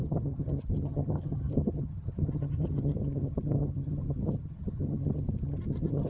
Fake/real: fake